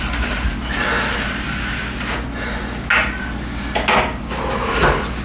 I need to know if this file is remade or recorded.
recorded